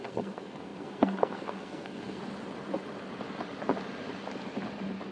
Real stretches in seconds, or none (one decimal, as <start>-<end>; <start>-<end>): 2.2-5.1